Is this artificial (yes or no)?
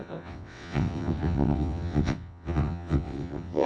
yes